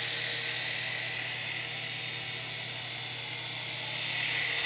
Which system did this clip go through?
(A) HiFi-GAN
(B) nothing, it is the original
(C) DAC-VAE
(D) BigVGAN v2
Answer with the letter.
B